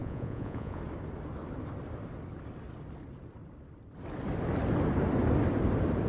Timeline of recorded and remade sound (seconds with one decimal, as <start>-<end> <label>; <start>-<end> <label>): 0.0-0.8 remade; 0.8-6.1 recorded